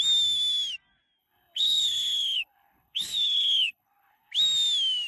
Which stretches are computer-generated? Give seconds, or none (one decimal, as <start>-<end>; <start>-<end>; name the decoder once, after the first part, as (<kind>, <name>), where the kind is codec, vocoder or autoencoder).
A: 1.2-4.3 (codec, HILCodec)